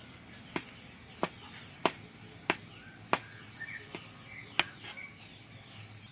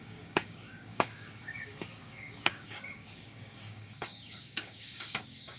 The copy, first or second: second